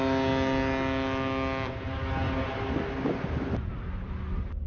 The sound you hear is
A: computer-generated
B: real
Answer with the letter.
B